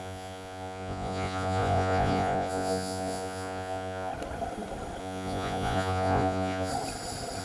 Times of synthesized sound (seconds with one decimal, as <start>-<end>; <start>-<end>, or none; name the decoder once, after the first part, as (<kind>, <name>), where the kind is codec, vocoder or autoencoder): 0.0-4.1 (vocoder, Vocos); 5.0-6.7